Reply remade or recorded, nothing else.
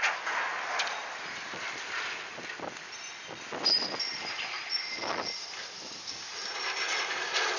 recorded